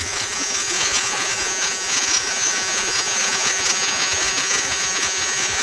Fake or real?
fake